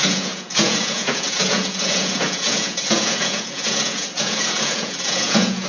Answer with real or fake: fake